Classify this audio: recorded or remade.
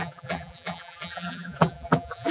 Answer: remade